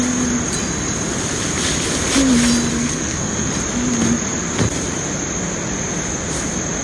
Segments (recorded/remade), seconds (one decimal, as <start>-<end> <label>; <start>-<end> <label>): 0.0-2.7 recorded; 2.7-3.5 remade; 3.5-6.8 recorded